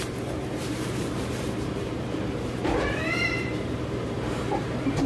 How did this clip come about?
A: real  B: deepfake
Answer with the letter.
B